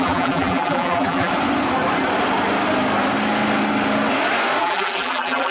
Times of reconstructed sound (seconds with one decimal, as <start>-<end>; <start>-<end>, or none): 0.0-1.3; 4.6-5.5